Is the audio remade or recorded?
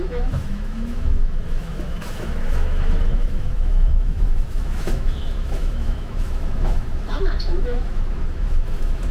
remade